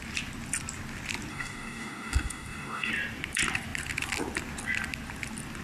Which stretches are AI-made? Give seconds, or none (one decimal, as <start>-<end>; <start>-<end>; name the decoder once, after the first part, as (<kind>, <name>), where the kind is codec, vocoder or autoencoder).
1.3-2.9 (codec, DAC)